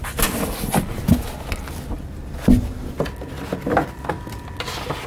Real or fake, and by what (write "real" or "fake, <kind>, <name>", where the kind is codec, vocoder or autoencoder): real